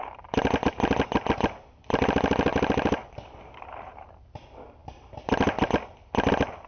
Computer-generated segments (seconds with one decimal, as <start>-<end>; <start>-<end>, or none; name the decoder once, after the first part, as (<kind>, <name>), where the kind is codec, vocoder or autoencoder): 2.5-3.9 (vocoder, BigVGAN v2)